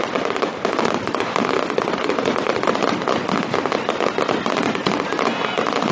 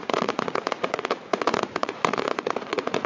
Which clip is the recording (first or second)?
first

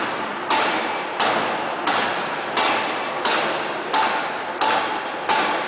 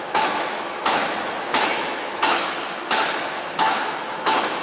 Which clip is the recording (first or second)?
first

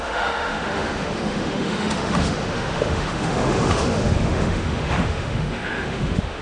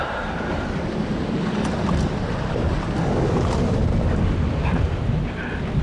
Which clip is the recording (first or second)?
second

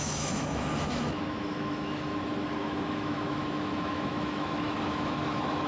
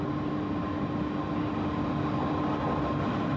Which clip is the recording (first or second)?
second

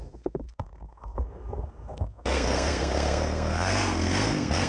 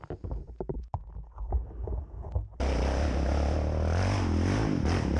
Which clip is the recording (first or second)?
second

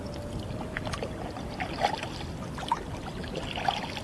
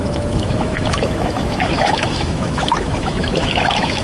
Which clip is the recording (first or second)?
first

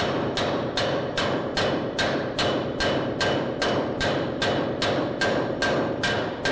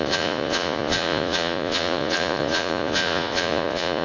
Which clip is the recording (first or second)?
first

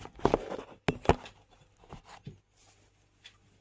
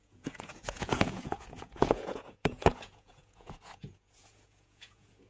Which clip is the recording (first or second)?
first